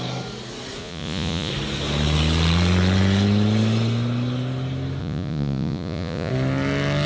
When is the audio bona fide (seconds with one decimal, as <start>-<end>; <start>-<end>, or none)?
0.0-0.8; 1.5-5.0; 6.3-7.1